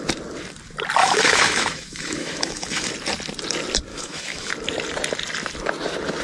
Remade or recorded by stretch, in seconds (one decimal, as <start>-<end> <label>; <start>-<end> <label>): 0.0-1.0 recorded; 1.0-2.9 remade; 2.9-3.9 recorded; 3.9-4.5 remade; 4.5-6.2 recorded